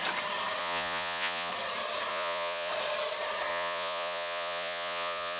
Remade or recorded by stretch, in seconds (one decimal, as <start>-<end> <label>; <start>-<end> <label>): 0.0-0.6 recorded; 0.6-1.5 remade; 1.5-2.1 recorded; 2.1-2.7 remade; 2.7-3.5 recorded; 3.5-5.4 remade